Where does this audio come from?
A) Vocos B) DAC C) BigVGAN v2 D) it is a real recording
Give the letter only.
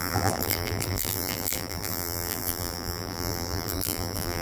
C